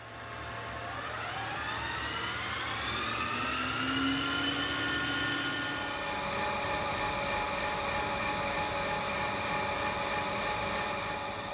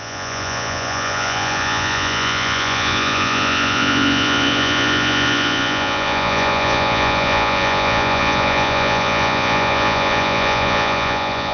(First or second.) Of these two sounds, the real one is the first